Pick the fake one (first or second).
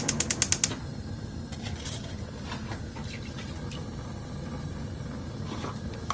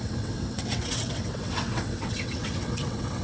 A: second